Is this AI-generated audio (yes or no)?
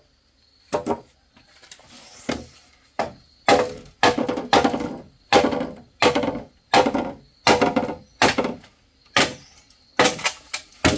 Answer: no